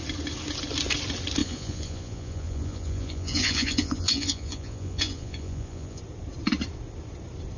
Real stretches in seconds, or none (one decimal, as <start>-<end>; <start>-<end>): 0.0-1.4; 6.0-7.6